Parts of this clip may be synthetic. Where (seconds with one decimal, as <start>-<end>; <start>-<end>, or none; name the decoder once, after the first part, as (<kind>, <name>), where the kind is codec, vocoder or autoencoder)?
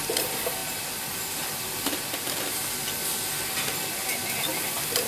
none